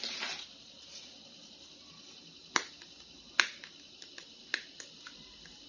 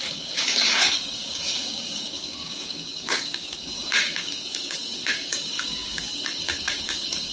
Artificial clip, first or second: second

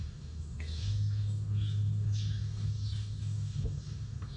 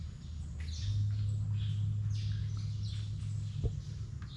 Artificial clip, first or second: first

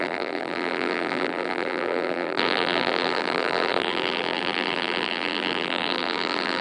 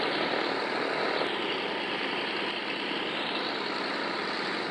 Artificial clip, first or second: first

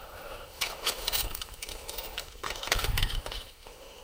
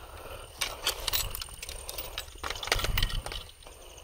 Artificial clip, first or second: first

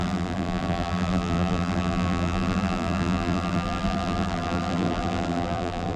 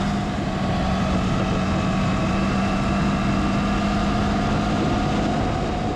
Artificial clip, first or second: first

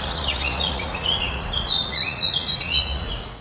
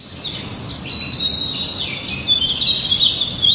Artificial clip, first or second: first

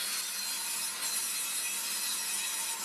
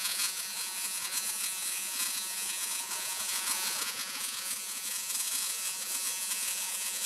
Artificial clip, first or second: second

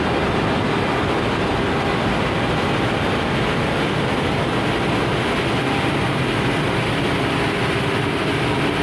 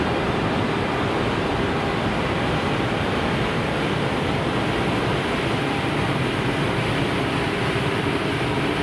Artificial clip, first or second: second